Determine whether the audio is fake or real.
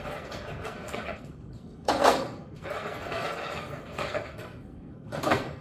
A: fake